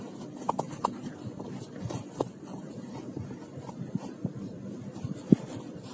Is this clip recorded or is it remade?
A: recorded